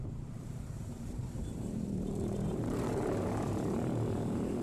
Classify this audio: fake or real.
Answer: fake